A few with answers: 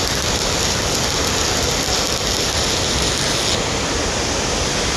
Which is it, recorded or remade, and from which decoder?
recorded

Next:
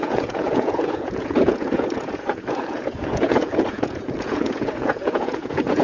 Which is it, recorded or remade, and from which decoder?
remade, vocoder, Vocos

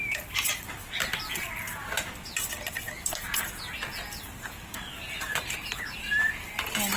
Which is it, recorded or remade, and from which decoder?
recorded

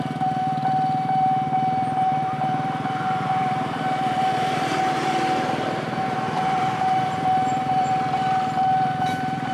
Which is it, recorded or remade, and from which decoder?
remade, vocoder, BigVGAN v2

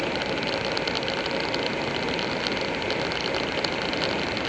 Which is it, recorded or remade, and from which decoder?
recorded